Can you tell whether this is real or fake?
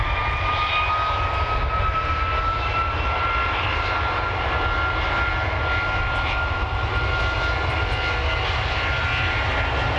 real